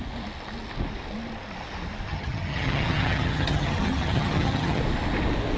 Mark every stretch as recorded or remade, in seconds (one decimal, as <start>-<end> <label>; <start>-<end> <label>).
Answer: 0.0-2.1 recorded; 2.1-4.8 remade; 4.8-5.6 recorded